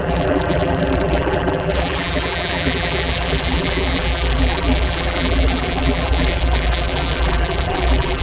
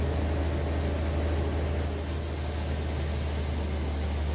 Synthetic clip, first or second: first